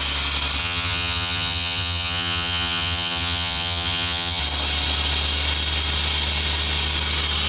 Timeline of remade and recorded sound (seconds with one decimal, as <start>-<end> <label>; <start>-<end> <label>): 0.0-0.6 recorded; 0.6-4.4 remade; 4.4-7.5 recorded